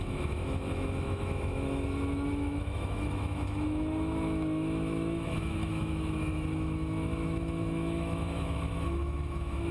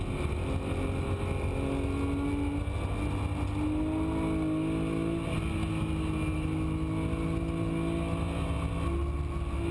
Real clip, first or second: second